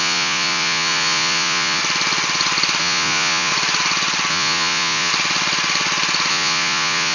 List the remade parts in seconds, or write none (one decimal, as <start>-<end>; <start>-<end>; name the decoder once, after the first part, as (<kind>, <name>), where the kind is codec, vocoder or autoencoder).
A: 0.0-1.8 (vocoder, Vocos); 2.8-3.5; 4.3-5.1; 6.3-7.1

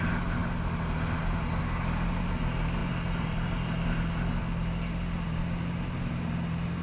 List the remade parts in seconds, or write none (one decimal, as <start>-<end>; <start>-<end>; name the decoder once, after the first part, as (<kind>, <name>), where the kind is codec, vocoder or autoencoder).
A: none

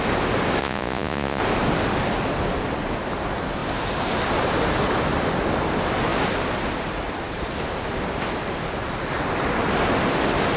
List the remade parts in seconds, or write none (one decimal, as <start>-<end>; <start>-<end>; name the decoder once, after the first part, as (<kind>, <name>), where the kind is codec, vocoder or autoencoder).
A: 0.6-1.4 (vocoder, Vocos)

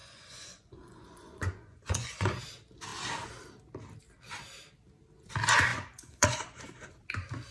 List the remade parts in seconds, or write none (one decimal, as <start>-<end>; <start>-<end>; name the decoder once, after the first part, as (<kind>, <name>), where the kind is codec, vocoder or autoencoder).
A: 0.0-2.4 (vocoder, Vocos); 5.7-6.6

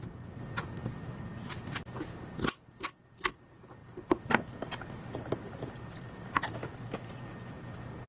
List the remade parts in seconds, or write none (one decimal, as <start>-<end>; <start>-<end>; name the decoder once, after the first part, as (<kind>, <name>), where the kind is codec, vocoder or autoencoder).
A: none

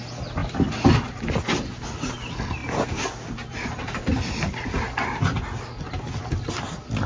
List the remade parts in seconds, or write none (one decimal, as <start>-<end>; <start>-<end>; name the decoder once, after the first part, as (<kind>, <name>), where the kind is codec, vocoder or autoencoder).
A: none

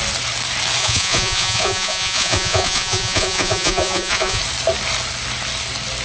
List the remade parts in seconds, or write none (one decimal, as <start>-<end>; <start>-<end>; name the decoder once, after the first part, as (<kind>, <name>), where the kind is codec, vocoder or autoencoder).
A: 0.8-4.4 (vocoder, Vocos)

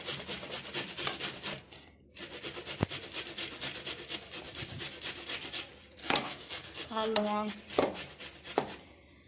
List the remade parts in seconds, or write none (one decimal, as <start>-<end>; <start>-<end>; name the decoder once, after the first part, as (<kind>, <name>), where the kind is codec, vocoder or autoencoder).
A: 6.0-7.5 (codec, SNAC)